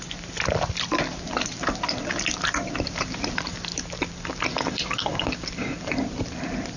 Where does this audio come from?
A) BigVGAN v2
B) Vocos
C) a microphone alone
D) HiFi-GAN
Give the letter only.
A